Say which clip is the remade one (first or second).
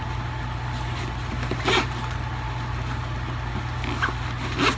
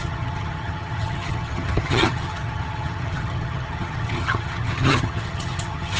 second